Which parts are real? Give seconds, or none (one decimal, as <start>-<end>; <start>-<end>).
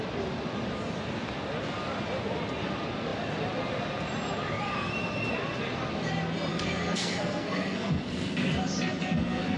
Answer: 0.0-6.5; 8.5-8.9